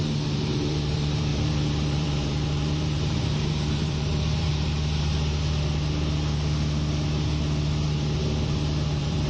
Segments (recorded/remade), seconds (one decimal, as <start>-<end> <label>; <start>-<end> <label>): 0.0-4.5 remade; 4.5-8.9 recorded; 8.9-9.3 remade